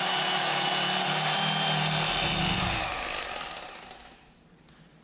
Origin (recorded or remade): recorded